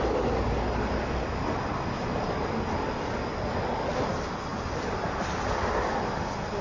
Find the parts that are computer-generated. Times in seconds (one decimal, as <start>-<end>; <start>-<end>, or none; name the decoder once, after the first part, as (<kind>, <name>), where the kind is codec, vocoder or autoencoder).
4.5-5.4 (vocoder, BigVGAN v2)